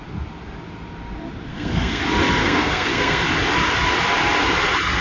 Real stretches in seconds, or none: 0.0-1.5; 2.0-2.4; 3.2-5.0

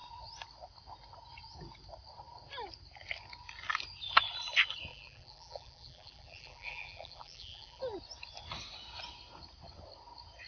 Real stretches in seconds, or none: 0.0-4.9; 7.8-10.5

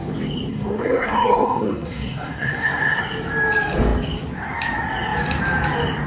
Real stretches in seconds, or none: 0.0-0.5; 3.0-6.1

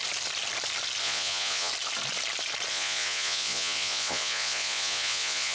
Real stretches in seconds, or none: 0.0-1.0; 1.7-2.7

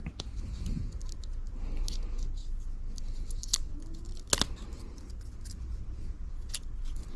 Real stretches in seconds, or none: 0.0-7.2

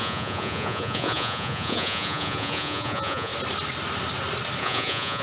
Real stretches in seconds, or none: 3.3-4.6

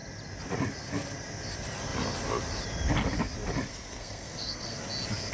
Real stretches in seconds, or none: 0.0-3.7; 4.8-5.3